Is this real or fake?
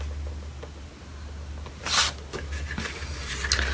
real